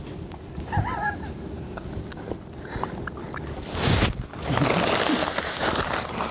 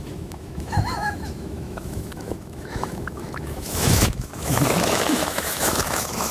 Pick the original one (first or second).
first